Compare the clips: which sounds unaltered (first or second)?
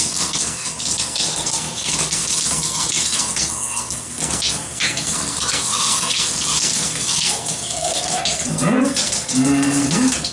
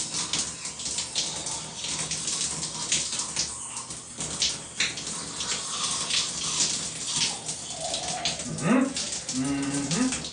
second